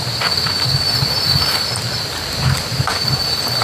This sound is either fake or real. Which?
real